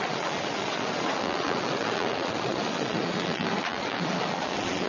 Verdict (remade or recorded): remade